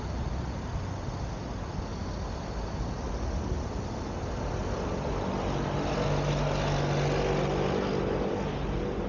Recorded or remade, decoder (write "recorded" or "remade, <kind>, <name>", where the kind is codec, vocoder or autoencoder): recorded